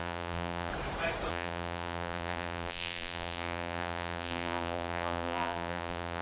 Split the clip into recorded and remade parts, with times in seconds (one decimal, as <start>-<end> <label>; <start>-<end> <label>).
0.0-0.7 remade; 0.7-1.3 recorded; 1.3-6.2 remade